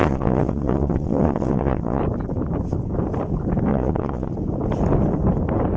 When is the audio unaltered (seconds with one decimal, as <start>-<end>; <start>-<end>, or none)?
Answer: 2.0-3.7; 4.3-5.8